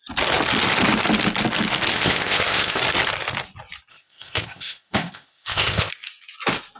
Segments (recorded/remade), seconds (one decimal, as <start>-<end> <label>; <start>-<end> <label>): 0.0-1.9 recorded; 1.9-2.8 remade; 2.8-3.9 recorded; 3.9-5.9 remade; 5.9-6.8 recorded